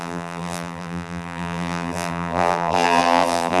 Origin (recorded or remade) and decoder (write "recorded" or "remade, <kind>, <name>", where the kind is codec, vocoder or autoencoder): remade, vocoder, BigVGAN v2